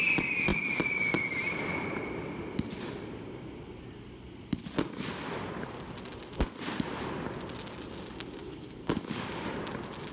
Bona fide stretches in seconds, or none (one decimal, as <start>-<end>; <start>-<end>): 0.0-8.4; 9.6-10.1